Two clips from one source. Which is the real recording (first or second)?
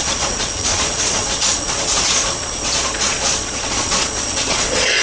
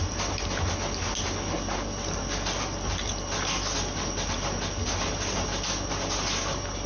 second